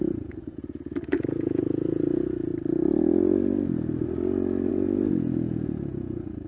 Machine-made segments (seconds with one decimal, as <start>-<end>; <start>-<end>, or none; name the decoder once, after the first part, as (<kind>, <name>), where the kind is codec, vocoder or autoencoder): 0.0-2.5 (vocoder, Vocos); 4.7-6.5